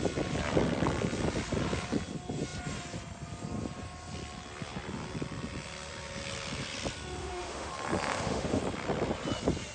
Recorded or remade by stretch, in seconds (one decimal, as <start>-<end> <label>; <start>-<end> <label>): 0.0-7.2 recorded; 7.2-7.7 remade; 7.7-8.1 recorded; 8.1-8.6 remade; 8.6-9.7 recorded